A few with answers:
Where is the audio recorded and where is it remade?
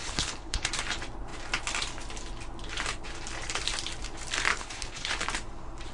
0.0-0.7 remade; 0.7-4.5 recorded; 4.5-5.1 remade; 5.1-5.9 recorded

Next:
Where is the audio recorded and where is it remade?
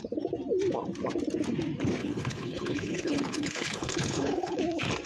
0.0-2.0 recorded; 2.0-4.6 remade; 4.6-5.1 recorded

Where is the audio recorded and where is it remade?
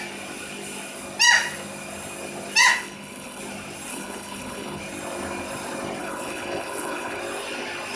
0.0-2.7 recorded; 2.7-3.4 remade; 3.4-3.9 recorded; 3.9-4.8 remade; 4.8-6.0 recorded; 6.0-7.2 remade; 7.2-8.0 recorded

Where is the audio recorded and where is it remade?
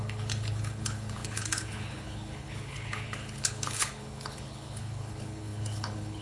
0.0-6.2 remade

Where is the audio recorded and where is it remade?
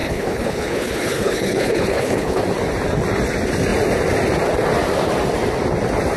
0.0-2.4 remade; 2.4-6.2 recorded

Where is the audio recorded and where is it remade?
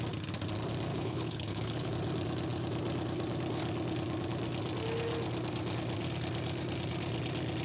0.0-0.9 recorded; 0.9-1.9 remade; 1.9-7.6 recorded